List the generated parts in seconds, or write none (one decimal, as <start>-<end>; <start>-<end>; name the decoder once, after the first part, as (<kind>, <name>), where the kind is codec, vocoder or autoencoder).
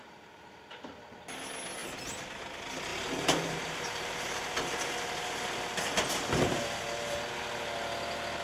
0.0-0.6 (vocoder, BigVGAN v2); 2.9-4.7